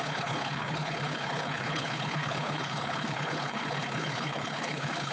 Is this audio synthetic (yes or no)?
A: yes